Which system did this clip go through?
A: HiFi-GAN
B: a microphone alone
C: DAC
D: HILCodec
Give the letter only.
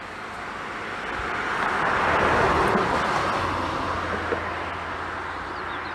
B